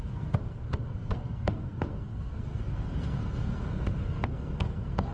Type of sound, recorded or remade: remade